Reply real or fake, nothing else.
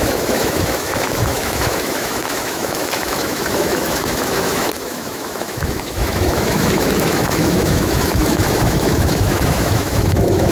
fake